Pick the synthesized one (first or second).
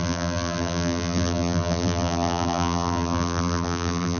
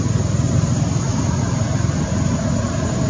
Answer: first